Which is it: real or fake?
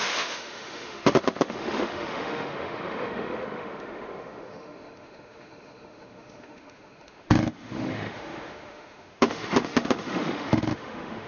fake